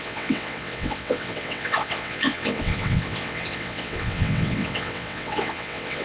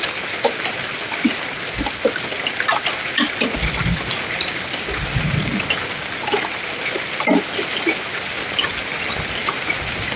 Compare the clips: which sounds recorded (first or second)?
second